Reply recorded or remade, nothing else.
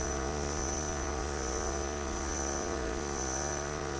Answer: remade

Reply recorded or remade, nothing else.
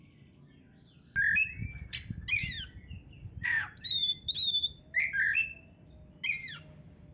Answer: recorded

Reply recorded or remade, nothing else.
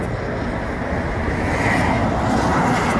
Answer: recorded